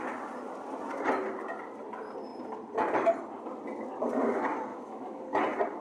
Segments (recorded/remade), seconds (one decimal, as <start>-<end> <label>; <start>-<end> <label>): 0.0-4.7 recorded; 4.7-5.2 remade; 5.2-5.8 recorded